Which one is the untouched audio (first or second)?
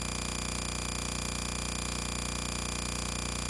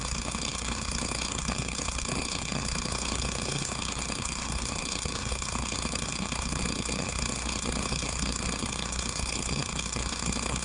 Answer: first